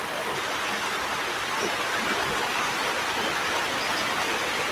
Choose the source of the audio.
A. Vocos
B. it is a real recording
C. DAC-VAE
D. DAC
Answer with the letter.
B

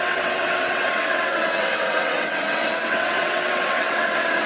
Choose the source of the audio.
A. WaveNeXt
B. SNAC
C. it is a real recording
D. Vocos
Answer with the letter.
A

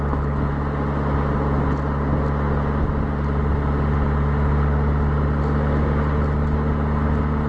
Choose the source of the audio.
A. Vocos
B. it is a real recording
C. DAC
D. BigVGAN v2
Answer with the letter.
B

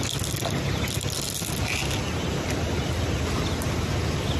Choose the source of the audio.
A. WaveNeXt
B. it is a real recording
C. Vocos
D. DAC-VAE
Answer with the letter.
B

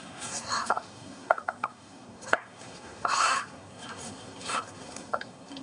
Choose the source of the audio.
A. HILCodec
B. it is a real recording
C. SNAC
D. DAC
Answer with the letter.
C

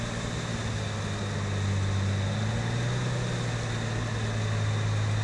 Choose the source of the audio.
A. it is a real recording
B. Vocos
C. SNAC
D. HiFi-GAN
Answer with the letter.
A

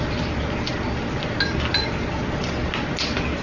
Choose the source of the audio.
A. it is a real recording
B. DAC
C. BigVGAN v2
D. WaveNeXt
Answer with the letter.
A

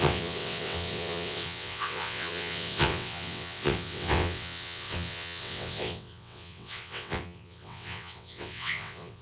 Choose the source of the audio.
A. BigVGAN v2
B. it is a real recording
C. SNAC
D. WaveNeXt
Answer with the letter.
D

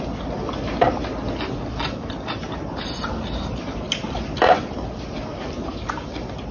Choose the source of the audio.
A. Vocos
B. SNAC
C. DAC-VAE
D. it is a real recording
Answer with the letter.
D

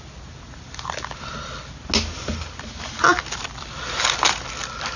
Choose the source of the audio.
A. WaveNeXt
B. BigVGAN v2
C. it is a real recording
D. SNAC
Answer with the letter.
C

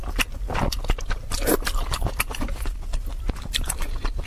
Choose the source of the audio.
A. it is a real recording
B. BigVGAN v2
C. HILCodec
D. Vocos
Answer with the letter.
A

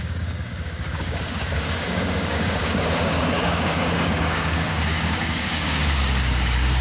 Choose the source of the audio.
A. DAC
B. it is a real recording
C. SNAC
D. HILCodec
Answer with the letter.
A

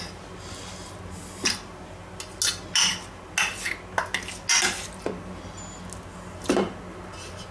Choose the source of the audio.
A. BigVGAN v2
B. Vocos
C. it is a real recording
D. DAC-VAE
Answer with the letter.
C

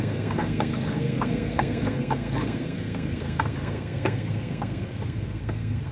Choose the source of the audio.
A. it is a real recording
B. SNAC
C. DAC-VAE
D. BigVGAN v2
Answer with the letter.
B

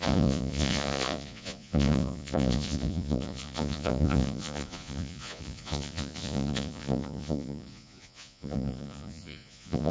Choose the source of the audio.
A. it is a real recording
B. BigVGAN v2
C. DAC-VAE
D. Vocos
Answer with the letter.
D